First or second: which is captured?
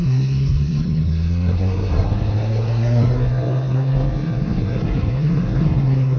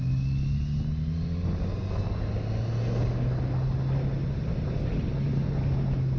second